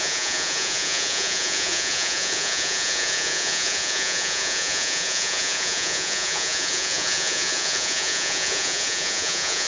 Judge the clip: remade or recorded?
remade